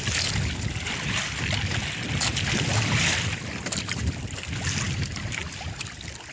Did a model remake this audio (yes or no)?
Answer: no